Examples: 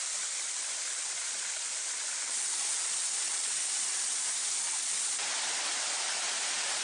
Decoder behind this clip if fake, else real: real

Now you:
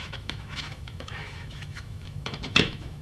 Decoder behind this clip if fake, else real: fake, autoencoder, DAC-VAE